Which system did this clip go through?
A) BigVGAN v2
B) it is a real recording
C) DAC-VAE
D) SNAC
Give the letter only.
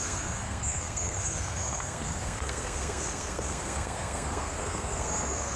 D